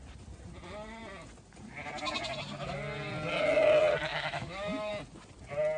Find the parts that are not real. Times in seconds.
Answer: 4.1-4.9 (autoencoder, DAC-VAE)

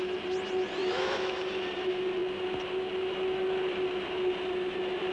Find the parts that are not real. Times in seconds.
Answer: 0.8-1.4 (autoencoder, DAC-VAE)

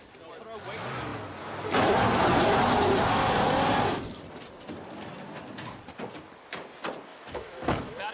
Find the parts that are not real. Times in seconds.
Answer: 7.1-8.1 (autoencoder, DAC-VAE)

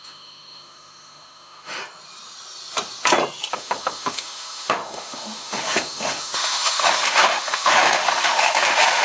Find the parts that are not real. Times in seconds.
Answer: 0.0-1.8 (autoencoder, DAC-VAE); 3.5-9.0

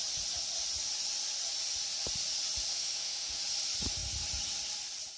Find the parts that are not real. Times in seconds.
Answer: 2.7-3.4 (autoencoder, DAC-VAE)

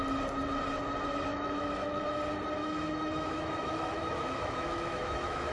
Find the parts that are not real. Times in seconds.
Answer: 1.3-2.0 (autoencoder, DAC-VAE); 2.6-5.5